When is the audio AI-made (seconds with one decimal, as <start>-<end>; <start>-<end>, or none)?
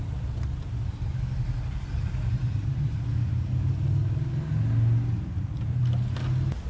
none